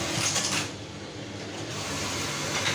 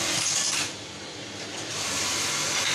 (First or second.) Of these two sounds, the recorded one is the second